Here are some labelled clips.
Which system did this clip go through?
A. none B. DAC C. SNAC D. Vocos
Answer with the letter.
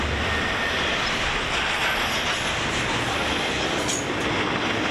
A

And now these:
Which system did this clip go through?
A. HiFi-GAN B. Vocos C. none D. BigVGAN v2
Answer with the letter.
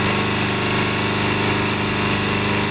C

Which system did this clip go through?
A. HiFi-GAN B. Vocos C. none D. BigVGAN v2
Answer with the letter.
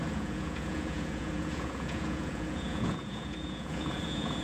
B